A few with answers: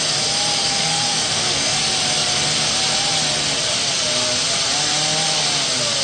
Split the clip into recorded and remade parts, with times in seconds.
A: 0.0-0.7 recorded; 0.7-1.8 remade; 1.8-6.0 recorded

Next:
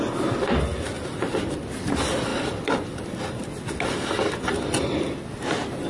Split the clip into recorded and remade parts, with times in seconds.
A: 0.0-5.9 recorded